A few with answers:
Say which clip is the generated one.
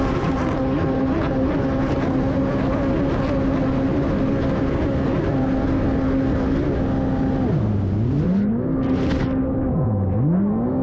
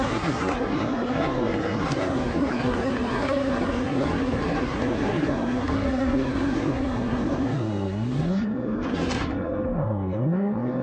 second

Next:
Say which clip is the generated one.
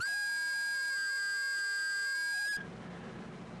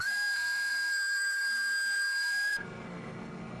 second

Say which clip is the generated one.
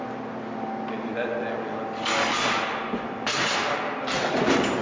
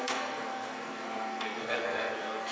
second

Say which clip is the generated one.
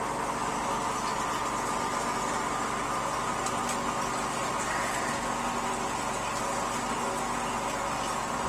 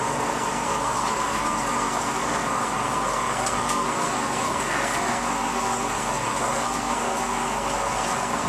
second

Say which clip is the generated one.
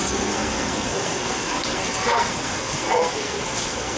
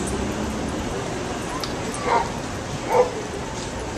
first